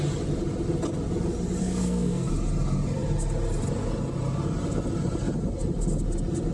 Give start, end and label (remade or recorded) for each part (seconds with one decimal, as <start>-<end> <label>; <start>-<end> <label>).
0.0-1.6 recorded; 1.6-2.3 remade; 2.3-6.5 recorded